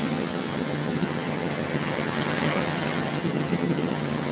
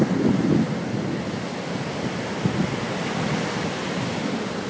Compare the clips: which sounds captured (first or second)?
second